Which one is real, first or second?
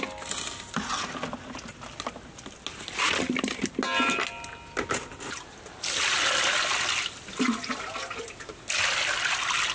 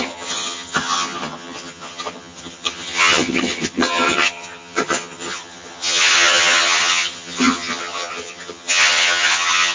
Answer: first